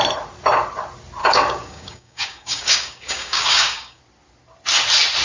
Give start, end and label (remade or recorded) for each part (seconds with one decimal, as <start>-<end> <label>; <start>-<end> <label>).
0.0-1.2 recorded; 1.2-4.0 remade; 4.0-5.2 recorded